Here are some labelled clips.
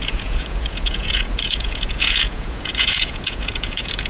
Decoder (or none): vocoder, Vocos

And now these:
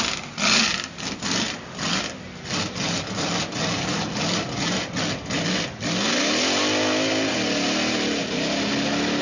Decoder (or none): none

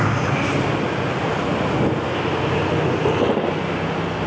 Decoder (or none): none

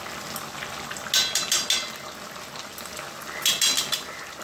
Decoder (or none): none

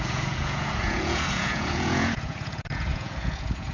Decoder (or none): vocoder, Vocos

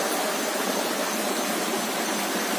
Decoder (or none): none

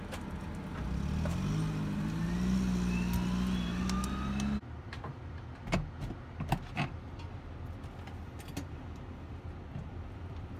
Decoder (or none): none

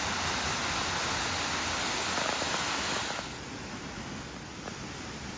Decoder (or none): none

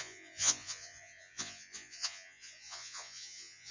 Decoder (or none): vocoder, Vocos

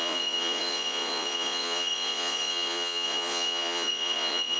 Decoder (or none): vocoder, Vocos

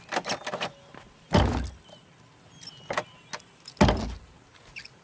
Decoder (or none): none